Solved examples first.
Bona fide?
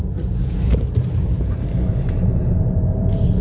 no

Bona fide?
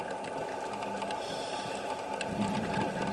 yes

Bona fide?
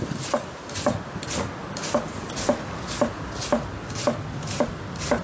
yes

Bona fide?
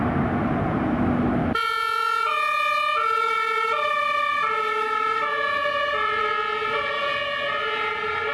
yes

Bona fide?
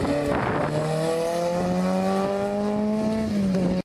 yes